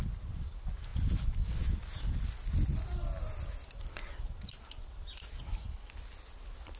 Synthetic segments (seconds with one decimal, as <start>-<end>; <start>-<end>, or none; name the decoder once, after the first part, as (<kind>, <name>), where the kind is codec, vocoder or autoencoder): none